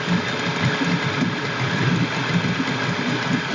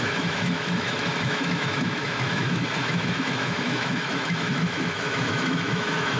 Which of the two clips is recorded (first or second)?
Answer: first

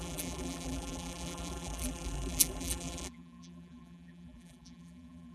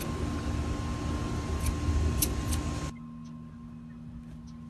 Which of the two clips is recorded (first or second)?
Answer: second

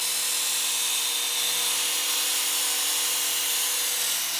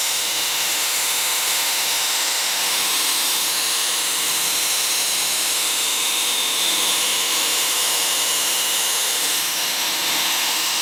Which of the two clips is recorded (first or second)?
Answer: first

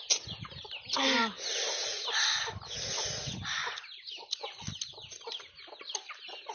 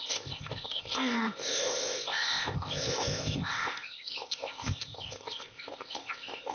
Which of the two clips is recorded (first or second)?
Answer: first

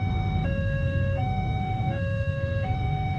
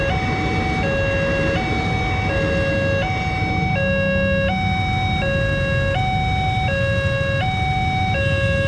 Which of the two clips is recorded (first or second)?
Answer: second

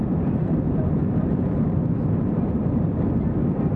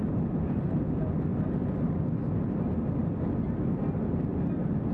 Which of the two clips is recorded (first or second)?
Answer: second